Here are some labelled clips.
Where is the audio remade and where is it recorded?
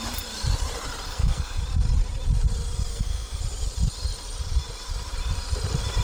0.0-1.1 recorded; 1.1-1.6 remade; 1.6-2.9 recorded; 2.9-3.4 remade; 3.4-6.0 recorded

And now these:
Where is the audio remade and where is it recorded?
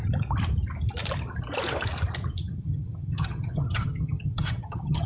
0.0-2.4 recorded; 2.4-5.1 remade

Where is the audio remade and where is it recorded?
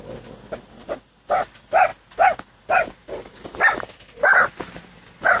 0.0-5.4 recorded